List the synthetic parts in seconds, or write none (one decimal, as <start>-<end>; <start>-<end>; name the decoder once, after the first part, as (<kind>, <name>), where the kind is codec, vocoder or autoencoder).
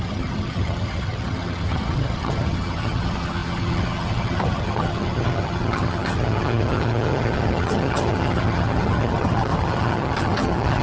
0.0-10.8 (vocoder, HiFi-GAN)